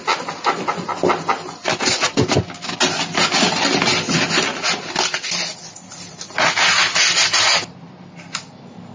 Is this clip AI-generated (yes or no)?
no